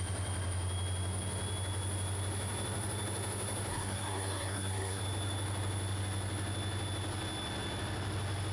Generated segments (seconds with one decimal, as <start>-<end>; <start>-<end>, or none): 3.7-5.0